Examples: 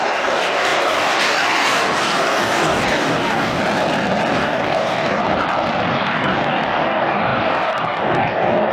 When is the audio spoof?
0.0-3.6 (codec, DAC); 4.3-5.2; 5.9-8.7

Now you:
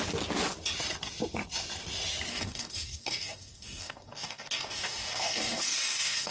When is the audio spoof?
2.3-6.3 (codec, DAC)